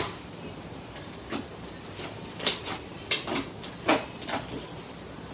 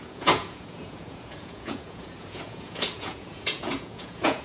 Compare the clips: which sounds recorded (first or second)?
first